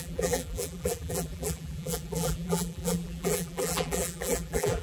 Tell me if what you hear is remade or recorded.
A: remade